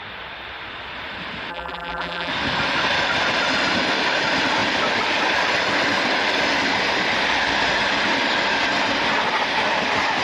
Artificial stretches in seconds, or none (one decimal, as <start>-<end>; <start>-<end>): 1.5-2.3